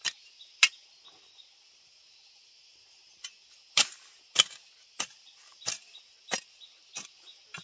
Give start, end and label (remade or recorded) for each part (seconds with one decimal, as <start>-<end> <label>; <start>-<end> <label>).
0.0-7.6 recorded